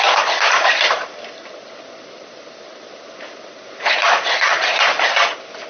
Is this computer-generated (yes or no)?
no